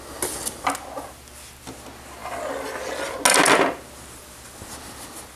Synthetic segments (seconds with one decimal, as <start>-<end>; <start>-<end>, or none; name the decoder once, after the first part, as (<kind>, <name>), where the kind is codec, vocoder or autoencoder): none